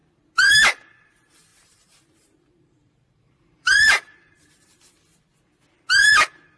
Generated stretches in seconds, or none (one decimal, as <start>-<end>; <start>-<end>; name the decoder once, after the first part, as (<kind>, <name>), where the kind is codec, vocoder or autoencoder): 1.5-4.5 (vocoder, BigVGAN v2)